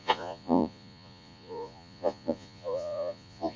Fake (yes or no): yes